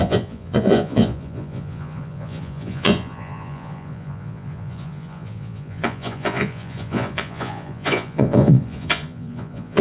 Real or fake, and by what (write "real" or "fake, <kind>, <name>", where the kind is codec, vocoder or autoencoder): fake, vocoder, Vocos